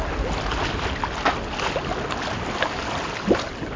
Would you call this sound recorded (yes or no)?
yes